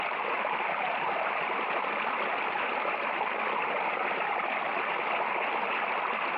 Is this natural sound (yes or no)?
yes